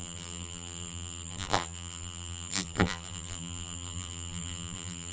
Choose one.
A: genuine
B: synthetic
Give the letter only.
B